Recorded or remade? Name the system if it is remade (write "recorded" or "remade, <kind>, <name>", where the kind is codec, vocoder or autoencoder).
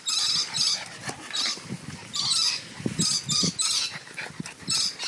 recorded